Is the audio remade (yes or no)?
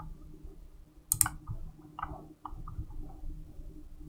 no